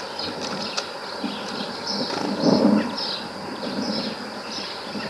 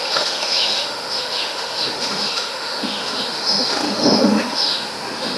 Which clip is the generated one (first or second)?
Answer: second